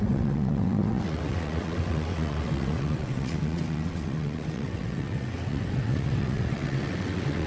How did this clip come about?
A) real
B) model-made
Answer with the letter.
B